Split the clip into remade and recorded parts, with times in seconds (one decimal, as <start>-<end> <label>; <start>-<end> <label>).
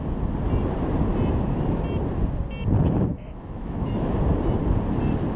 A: 0.0-3.1 recorded; 3.1-3.9 remade; 3.9-5.4 recorded